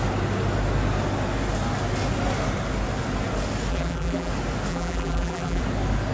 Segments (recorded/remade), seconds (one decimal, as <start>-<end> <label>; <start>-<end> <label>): 0.0-3.7 recorded; 3.7-4.3 remade; 4.3-4.7 recorded; 4.7-5.6 remade; 5.6-6.1 recorded